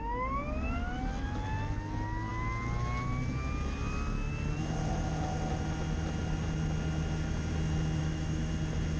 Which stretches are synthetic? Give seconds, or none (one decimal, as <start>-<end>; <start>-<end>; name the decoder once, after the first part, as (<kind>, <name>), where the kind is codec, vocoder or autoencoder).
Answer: 8.0-8.5 (autoencoder, DAC-VAE)